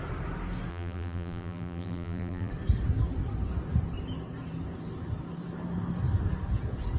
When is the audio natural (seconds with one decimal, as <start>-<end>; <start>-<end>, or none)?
0.0-0.7; 2.5-7.0